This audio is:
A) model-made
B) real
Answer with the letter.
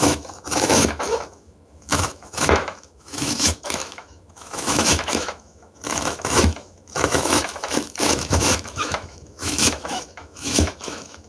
A